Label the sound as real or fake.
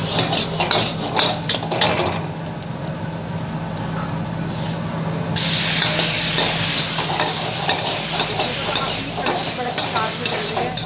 real